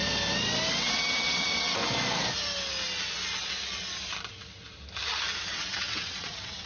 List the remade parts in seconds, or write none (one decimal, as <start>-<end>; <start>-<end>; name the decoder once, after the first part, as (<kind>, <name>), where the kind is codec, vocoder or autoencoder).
0.8-1.8 (vocoder, WaveNeXt); 5.5-6.7